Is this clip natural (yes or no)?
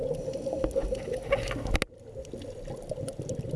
yes